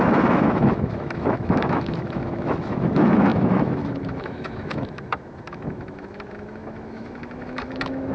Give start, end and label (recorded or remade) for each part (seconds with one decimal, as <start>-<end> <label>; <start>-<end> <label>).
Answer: 0.0-8.1 remade